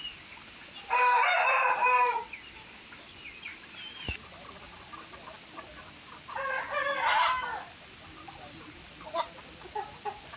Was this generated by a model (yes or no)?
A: no